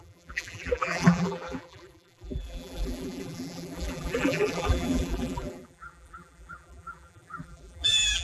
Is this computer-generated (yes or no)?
yes